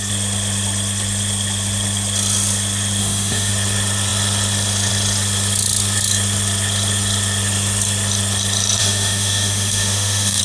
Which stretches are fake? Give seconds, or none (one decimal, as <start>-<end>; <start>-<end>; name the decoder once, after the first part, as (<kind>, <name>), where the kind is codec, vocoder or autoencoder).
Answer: 3.0-3.5 (autoencoder, DAC-VAE); 8.8-10.4